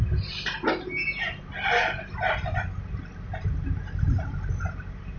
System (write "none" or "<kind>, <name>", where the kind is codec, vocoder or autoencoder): none